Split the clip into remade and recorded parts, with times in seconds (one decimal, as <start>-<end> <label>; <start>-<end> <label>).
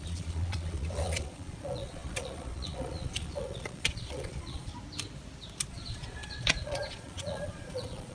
0.0-4.7 remade; 4.7-5.7 recorded; 5.7-8.1 remade